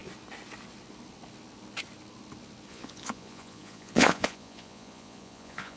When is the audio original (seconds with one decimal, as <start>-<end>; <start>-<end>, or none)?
0.0-2.7